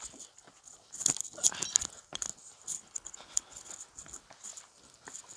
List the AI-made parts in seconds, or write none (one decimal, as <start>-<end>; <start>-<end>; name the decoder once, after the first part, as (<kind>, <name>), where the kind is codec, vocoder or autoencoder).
2.7-3.7 (codec, HILCodec)